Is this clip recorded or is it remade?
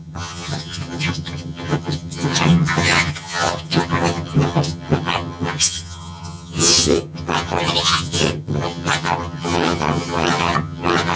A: remade